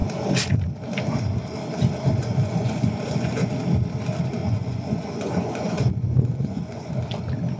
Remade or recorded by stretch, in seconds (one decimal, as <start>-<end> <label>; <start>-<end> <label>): 0.0-2.2 recorded; 2.2-3.5 remade; 3.5-4.4 recorded; 4.4-6.9 remade; 6.9-7.6 recorded